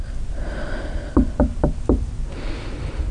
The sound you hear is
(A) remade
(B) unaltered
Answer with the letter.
B